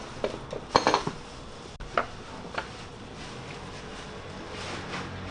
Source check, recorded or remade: recorded